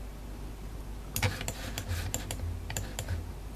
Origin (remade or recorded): recorded